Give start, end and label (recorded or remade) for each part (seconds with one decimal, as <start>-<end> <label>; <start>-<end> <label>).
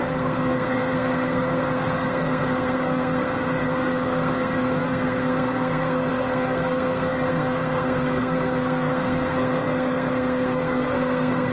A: 0.0-11.5 remade